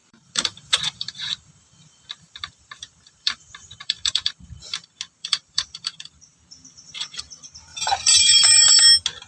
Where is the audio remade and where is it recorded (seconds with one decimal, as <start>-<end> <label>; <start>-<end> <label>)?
0.0-4.3 remade; 4.3-5.2 recorded; 5.2-7.2 remade; 7.2-7.7 recorded; 7.7-8.8 remade; 8.8-9.3 recorded